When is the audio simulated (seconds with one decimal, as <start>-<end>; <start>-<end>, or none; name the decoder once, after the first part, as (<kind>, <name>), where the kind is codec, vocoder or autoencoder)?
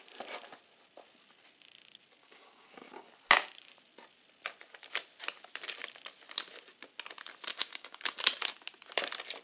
2.2-3.1 (codec, DAC); 7.5-8.2